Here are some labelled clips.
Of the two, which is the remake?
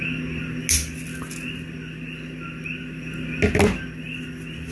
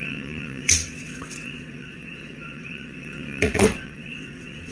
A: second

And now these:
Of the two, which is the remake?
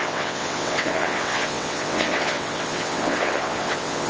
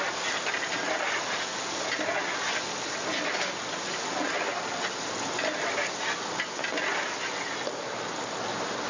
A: first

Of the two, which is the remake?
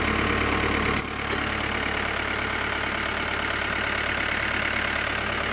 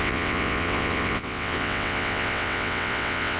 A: second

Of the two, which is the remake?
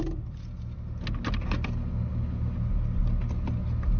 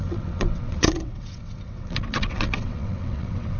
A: second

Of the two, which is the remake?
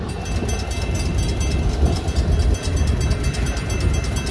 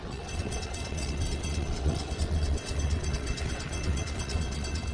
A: second